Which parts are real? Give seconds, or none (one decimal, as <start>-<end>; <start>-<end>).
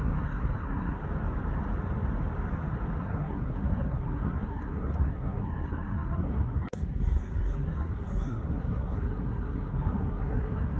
1.0-3.0